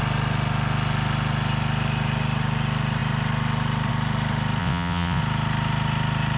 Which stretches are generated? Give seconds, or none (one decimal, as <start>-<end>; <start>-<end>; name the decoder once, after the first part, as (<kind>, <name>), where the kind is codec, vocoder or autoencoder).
4.6-5.2 (vocoder, WaveNeXt)